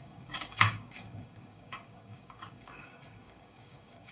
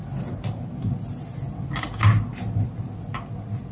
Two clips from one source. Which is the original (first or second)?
second